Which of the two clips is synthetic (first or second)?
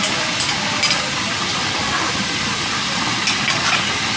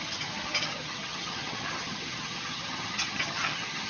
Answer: second